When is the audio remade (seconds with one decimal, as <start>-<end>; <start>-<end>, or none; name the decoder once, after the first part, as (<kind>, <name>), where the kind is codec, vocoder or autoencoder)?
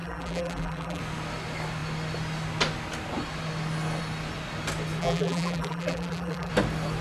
0.0-1.0 (vocoder, BigVGAN v2); 5.0-6.5